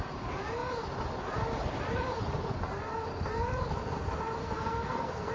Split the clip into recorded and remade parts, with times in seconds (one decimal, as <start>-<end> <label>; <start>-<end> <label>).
0.0-4.4 recorded; 4.4-5.3 remade